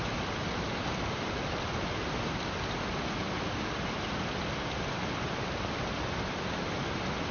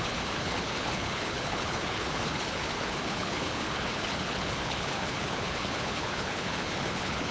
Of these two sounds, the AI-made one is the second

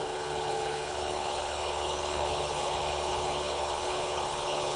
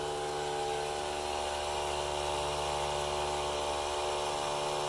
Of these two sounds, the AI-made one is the first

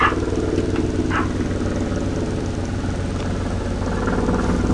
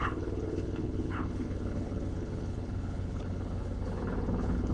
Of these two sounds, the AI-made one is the second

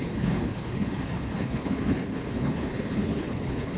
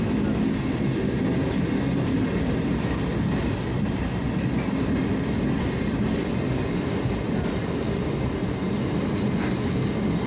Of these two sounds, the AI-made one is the first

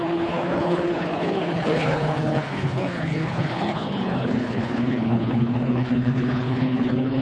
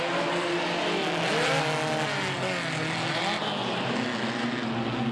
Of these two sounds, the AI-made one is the first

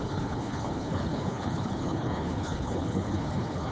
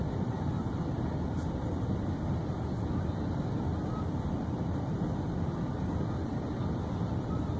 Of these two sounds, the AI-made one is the first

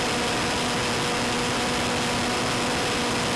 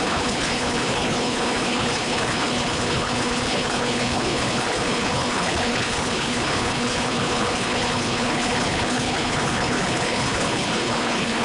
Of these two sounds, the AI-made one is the second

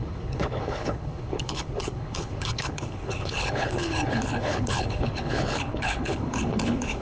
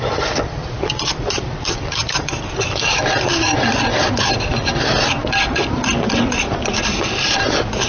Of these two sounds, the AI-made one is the first